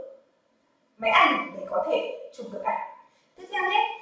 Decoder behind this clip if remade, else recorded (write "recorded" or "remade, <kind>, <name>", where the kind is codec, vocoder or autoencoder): recorded